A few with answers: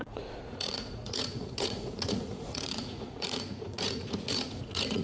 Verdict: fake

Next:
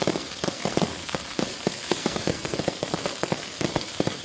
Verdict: fake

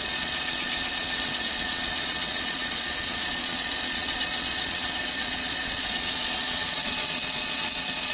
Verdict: fake